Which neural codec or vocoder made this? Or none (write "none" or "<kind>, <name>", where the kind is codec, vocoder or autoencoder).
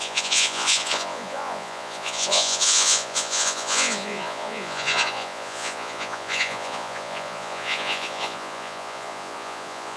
vocoder, Vocos